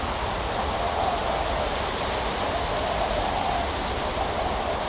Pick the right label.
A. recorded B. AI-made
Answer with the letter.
A